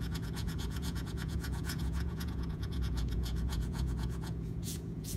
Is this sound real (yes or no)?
no